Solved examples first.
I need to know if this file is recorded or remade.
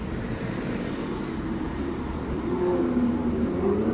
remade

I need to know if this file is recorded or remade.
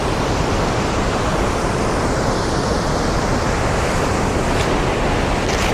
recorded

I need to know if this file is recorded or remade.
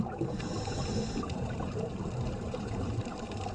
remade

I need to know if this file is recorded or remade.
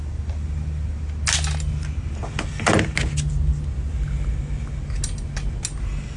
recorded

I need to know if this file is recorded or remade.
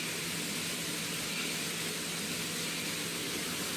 recorded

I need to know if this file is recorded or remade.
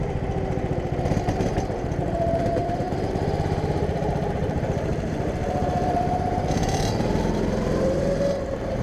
remade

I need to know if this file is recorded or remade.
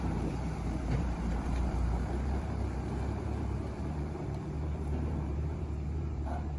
remade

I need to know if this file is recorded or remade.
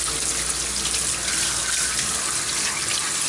recorded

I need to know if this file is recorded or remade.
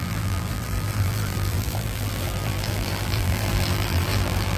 remade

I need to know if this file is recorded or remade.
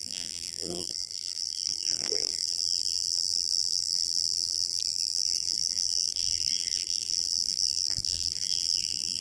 remade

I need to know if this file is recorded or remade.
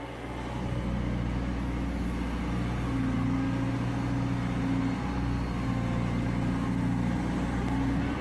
recorded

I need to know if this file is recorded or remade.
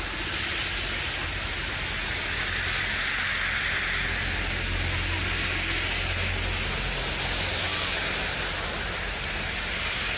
recorded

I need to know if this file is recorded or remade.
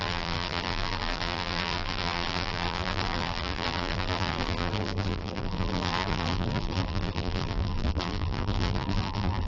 remade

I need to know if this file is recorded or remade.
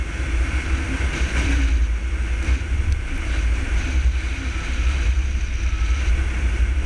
recorded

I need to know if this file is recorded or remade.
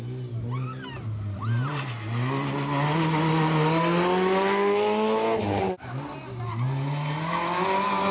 recorded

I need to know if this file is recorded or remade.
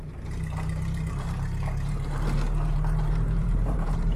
remade